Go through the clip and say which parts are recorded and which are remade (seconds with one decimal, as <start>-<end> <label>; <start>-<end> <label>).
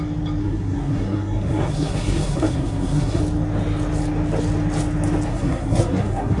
0.0-0.4 recorded; 0.4-3.2 remade; 3.2-5.3 recorded; 5.3-6.4 remade